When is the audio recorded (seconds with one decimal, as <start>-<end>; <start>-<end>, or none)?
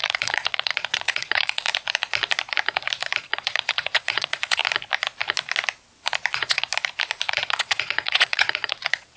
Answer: 1.7-3.2; 4.6-6.3; 6.7-7.3